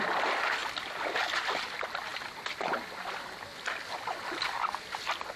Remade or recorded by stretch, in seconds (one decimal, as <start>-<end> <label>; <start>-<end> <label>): 0.0-0.6 recorded; 0.6-1.2 remade; 1.2-5.4 recorded